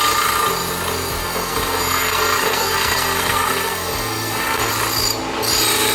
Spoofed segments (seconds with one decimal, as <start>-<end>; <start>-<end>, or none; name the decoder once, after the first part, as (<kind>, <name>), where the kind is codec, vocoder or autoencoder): 1.2-4.7 (codec, SNAC)